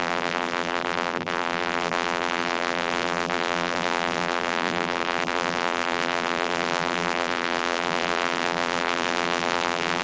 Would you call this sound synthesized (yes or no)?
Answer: yes